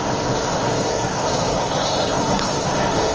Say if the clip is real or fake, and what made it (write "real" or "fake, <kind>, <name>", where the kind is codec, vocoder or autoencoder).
fake, codec, SNAC